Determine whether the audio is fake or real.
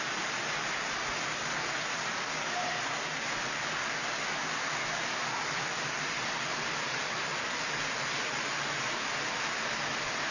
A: real